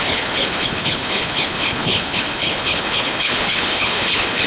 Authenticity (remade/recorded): remade